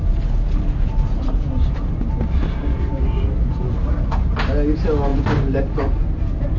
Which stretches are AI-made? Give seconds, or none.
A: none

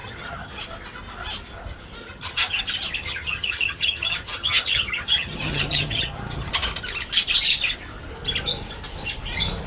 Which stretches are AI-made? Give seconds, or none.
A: 0.0-0.6; 2.0-2.6; 3.0-6.5